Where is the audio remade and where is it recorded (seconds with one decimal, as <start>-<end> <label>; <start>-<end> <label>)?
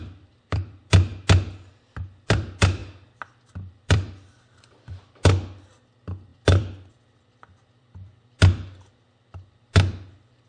0.0-1.1 remade; 1.1-1.7 recorded; 1.7-10.5 remade